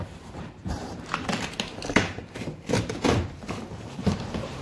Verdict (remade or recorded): remade